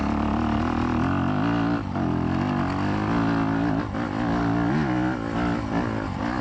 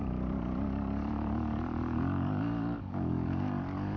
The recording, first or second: first